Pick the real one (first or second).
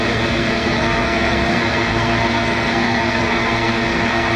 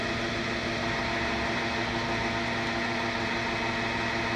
second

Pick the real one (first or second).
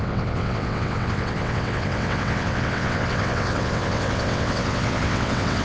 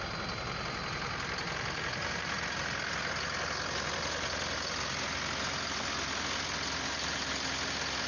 second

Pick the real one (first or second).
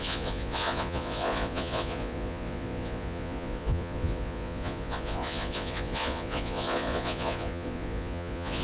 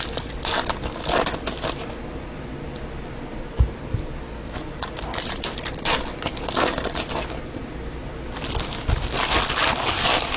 second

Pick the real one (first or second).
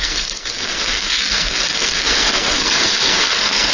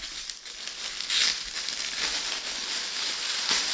second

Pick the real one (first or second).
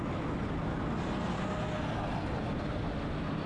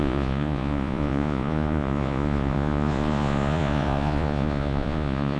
first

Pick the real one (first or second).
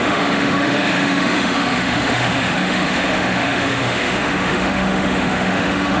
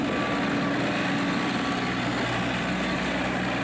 second